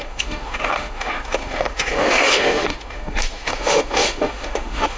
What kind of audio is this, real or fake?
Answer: fake